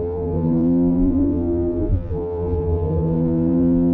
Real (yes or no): no